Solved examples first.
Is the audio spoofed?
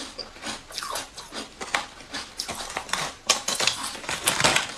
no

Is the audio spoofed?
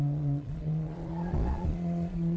yes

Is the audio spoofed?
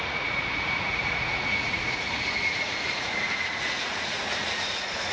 yes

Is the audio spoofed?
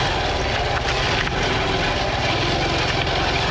no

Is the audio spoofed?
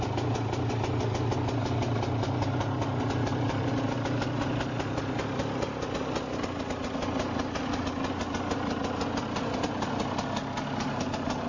no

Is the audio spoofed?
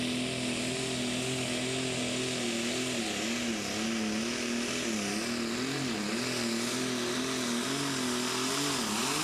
no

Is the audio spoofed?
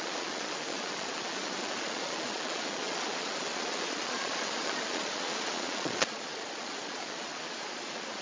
yes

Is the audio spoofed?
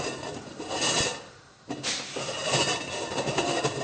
no